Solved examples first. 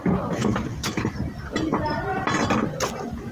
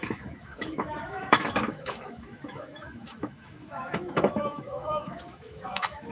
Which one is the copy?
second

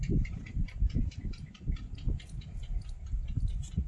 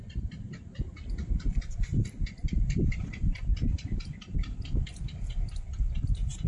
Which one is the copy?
second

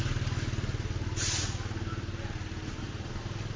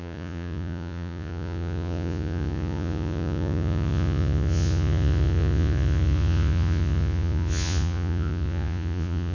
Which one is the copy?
second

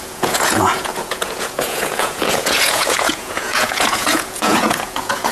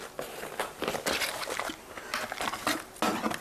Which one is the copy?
first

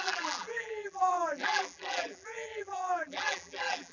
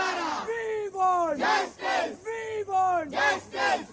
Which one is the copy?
first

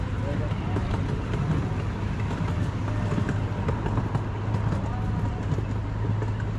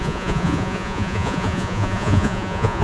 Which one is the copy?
second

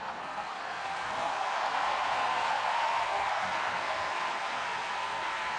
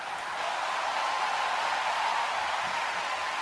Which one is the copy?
first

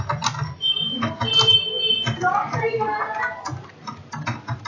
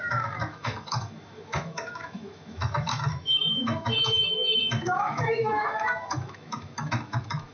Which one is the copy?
second